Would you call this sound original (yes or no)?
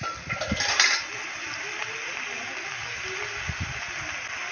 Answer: yes